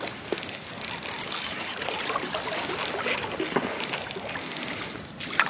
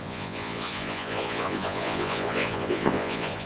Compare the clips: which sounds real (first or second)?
first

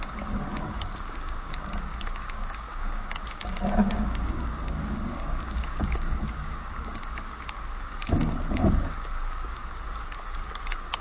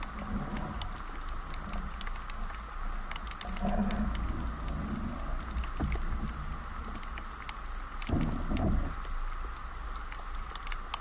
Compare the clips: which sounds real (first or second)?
second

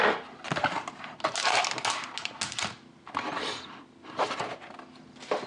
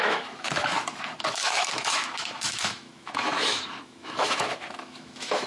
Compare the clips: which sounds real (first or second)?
first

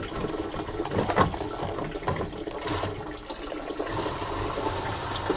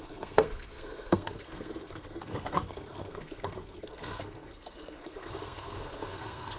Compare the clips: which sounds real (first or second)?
first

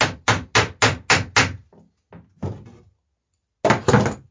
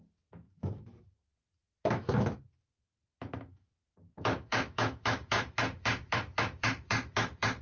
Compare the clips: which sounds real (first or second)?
first